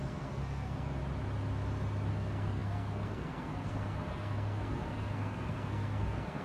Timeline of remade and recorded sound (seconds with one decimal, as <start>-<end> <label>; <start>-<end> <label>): 0.0-1.0 remade; 1.0-2.1 recorded; 2.1-6.4 remade